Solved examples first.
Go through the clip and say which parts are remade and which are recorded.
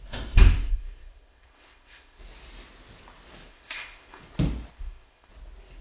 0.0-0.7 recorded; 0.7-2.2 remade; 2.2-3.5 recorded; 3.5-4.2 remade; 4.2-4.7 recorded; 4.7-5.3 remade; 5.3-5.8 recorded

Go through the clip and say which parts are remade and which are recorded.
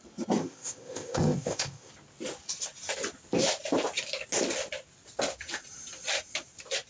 0.0-0.4 recorded; 0.4-1.9 remade; 1.9-6.9 recorded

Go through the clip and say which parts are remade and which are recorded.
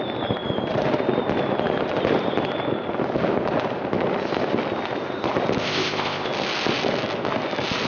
0.0-5.6 recorded; 5.6-6.3 remade; 6.3-7.9 recorded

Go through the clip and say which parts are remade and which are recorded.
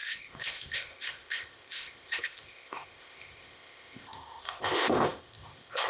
0.0-5.9 remade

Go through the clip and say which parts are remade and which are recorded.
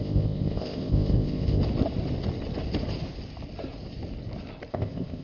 0.0-1.6 remade; 1.6-4.7 recorded; 4.7-5.2 remade